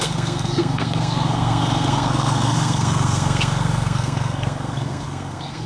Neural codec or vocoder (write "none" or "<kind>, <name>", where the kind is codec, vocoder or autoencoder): codec, SNAC